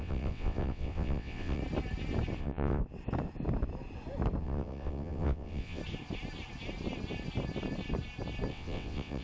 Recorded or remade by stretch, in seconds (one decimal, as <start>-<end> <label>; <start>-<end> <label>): 0.0-1.6 remade; 1.6-2.4 recorded; 2.4-2.8 remade; 2.8-4.4 recorded; 4.4-5.8 remade; 5.8-8.5 recorded; 8.5-9.2 remade